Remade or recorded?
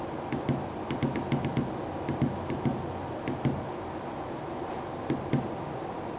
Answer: recorded